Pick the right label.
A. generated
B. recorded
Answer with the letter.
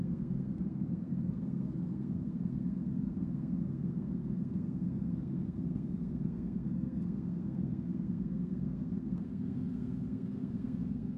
A